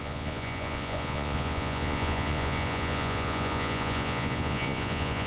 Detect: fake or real fake